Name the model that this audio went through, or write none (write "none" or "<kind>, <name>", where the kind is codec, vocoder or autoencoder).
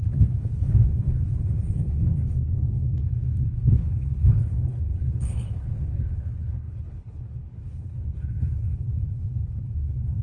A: codec, HILCodec